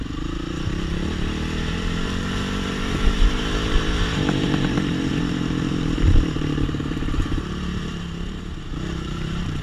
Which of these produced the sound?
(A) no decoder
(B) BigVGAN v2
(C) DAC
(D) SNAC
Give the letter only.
B